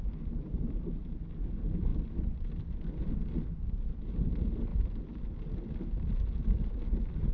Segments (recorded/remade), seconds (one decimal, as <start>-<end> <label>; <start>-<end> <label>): 0.0-7.3 recorded

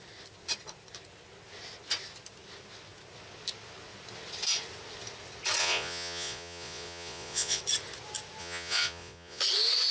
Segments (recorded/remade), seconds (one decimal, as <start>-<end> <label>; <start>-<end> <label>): 0.0-5.6 recorded; 5.6-7.6 remade; 7.6-8.4 recorded; 8.4-9.4 remade; 9.4-9.9 recorded

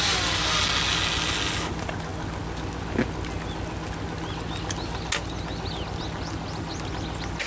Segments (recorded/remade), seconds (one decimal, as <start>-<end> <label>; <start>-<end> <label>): 0.0-7.5 recorded

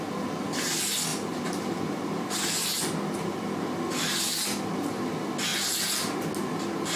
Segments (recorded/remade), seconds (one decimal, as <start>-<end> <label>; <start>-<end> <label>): 0.0-1.1 recorded; 1.1-1.6 remade; 1.6-7.0 recorded